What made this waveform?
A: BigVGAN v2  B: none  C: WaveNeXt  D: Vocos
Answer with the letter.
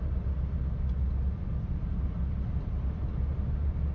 B